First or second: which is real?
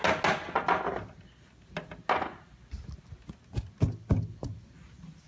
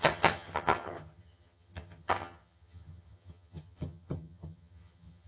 first